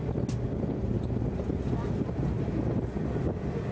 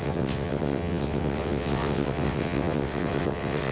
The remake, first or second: second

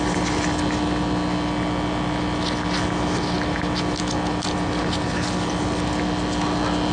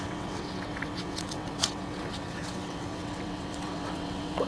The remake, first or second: second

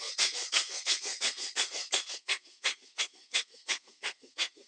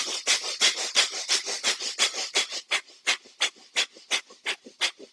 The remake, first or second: first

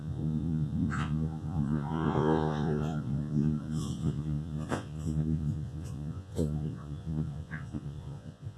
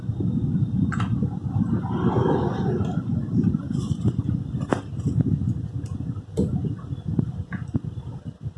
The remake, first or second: first